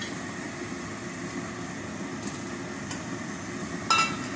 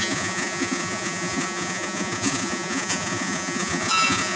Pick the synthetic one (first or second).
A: second